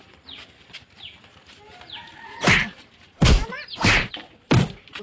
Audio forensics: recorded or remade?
recorded